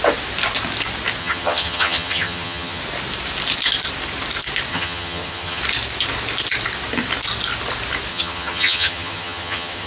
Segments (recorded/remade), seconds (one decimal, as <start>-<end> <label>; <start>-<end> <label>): 0.0-1.2 recorded; 1.2-2.8 remade; 2.8-4.7 recorded; 4.7-5.6 remade; 5.6-8.1 recorded; 8.1-9.9 remade